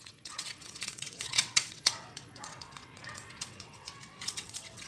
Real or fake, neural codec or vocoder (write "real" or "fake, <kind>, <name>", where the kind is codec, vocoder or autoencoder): fake, vocoder, WaveNeXt